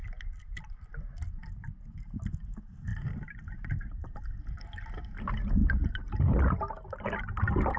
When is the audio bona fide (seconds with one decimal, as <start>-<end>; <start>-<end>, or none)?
2.0-2.9; 4.2-7.8